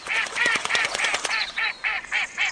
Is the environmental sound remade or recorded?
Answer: remade